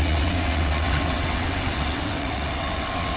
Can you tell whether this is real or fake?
fake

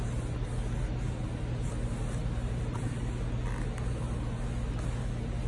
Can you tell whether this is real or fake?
real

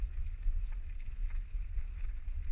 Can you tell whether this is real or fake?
real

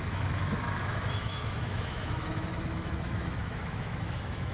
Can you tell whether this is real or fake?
fake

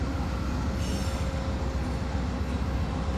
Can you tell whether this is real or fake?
real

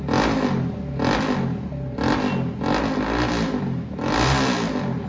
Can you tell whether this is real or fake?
real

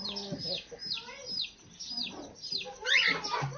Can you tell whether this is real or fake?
real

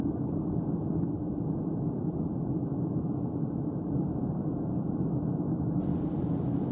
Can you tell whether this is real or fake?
fake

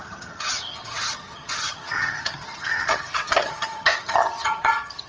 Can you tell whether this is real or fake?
fake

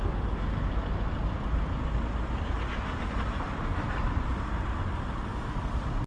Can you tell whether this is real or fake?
real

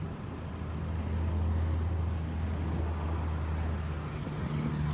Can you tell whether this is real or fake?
real